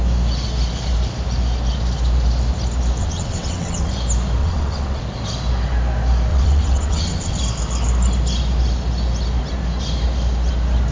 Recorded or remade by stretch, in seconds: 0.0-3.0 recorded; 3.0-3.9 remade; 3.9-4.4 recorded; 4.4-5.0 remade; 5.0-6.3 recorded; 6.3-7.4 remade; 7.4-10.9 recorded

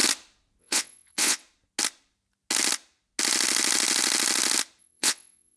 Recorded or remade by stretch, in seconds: 0.0-0.6 recorded; 0.6-1.4 remade; 1.4-4.8 recorded; 4.8-5.6 remade